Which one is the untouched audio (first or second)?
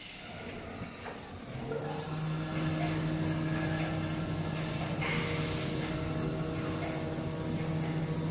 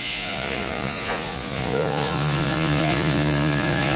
first